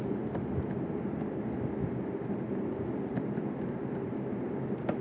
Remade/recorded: recorded